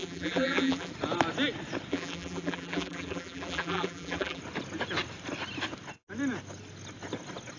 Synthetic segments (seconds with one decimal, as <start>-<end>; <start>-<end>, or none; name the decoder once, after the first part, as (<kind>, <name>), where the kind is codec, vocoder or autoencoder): 0.0-0.9 (vocoder, BigVGAN v2); 1.9-4.4